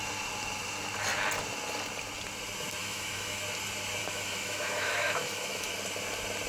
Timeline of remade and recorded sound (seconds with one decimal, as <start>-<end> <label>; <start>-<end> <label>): 0.0-2.8 recorded; 2.8-3.4 remade; 3.4-4.0 recorded; 4.0-5.7 remade; 5.7-6.5 recorded

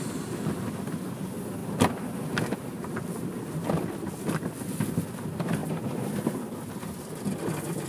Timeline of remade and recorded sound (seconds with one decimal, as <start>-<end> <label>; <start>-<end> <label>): 0.0-7.9 recorded

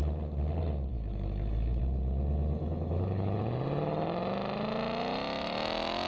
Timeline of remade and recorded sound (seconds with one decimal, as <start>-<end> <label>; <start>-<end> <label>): 0.0-0.9 recorded; 0.9-1.8 remade; 1.8-2.6 recorded; 2.6-3.4 remade; 3.4-6.1 recorded

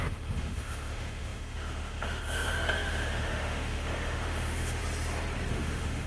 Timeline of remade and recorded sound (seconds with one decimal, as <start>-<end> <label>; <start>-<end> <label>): 0.0-4.8 remade; 4.8-5.5 recorded; 5.5-6.1 remade

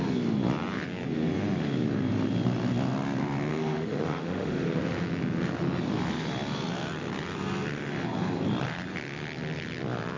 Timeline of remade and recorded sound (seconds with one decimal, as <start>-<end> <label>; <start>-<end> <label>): 0.0-3.5 recorded; 3.5-4.8 remade; 4.8-10.2 recorded

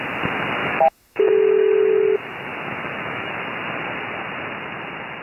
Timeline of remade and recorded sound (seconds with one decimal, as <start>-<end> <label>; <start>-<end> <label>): 0.0-0.6 recorded; 0.6-1.9 remade; 1.9-2.5 recorded; 2.5-3.4 remade; 3.4-5.2 recorded